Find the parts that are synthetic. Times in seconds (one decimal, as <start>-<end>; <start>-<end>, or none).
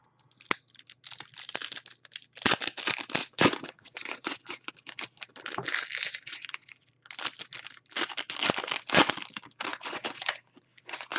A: 3.2-4.7; 6.1-6.9; 9.7-11.2